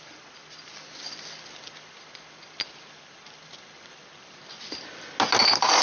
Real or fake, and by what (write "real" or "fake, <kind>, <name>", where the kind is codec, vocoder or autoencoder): real